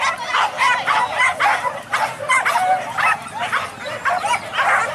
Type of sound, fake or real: real